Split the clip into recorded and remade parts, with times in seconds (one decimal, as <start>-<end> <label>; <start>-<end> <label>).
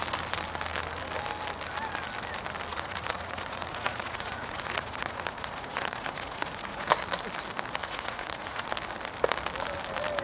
0.0-2.7 recorded; 2.7-6.9 remade; 6.9-7.8 recorded; 7.8-8.7 remade; 8.7-10.2 recorded